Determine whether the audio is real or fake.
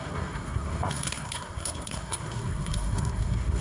fake